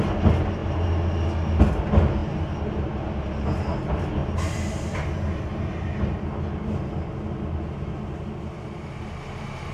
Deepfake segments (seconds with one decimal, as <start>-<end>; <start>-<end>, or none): 4.2-4.9